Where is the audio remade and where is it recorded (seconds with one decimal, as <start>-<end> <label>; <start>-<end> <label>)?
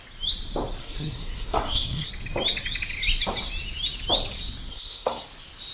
0.0-0.8 recorded; 0.8-2.1 remade; 2.1-4.7 recorded; 4.7-5.2 remade; 5.2-5.7 recorded